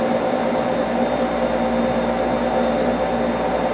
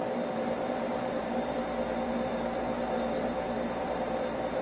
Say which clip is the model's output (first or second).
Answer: second